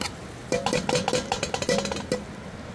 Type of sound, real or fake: real